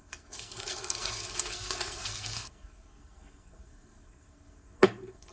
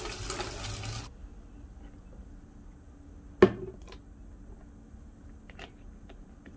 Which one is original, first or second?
second